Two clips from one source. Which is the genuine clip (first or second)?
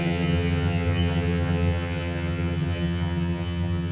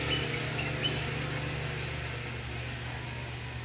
second